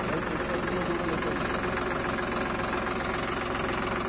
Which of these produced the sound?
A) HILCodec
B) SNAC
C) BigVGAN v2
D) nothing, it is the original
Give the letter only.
D